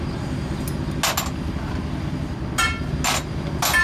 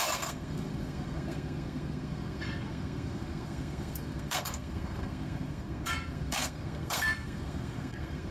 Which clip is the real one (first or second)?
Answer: first